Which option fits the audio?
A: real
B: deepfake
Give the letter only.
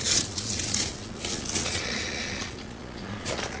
B